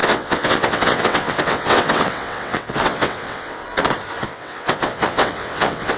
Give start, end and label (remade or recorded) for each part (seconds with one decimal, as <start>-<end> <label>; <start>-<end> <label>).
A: 0.0-3.6 remade; 3.6-4.2 recorded; 4.2-6.0 remade